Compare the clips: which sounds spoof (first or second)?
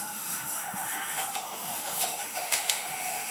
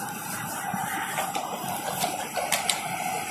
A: first